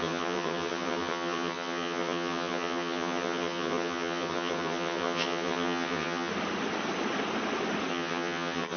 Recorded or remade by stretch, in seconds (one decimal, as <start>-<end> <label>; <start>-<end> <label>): 0.0-6.3 remade; 6.3-7.9 recorded; 7.9-8.8 remade